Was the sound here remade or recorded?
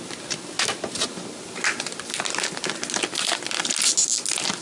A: recorded